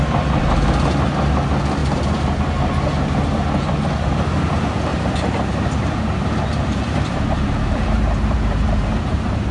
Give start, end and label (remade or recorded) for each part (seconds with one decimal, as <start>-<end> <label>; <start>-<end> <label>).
0.0-1.8 recorded; 1.8-2.3 remade; 2.3-4.9 recorded; 4.9-9.5 remade